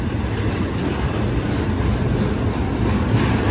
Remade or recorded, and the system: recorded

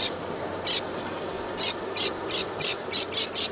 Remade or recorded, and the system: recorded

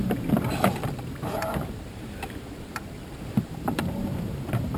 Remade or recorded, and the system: remade, vocoder, BigVGAN v2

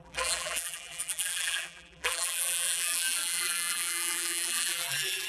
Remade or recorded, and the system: remade, vocoder, BigVGAN v2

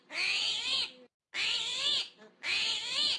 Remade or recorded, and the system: recorded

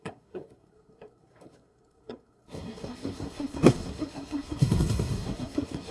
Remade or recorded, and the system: remade, codec, SNAC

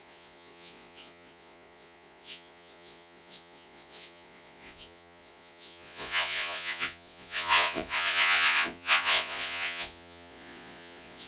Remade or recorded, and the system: remade, vocoder, Vocos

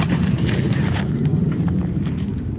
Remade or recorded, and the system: remade, vocoder, BigVGAN v2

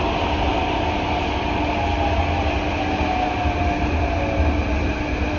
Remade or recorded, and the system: recorded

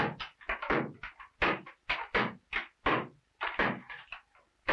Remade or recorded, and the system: recorded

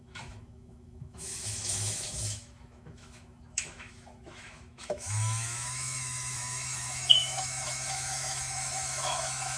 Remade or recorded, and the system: remade, autoencoder, DAC-VAE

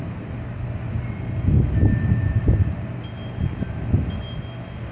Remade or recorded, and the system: recorded